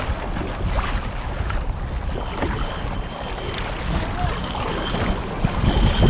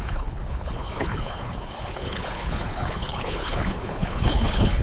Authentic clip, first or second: first